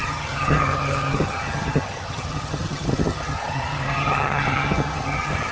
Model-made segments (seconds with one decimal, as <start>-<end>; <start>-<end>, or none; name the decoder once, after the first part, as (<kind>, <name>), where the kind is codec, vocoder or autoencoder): 0.0-5.5 (vocoder, HiFi-GAN)